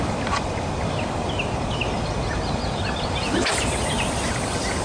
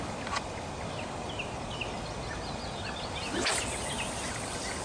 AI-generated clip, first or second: first